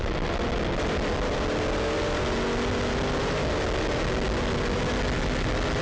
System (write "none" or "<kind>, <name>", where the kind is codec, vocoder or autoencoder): none